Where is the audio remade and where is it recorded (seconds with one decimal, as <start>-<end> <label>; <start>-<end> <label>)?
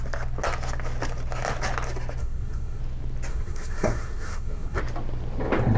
0.0-2.2 recorded; 2.2-2.8 remade; 2.8-3.3 recorded; 3.3-4.8 remade; 4.8-5.8 recorded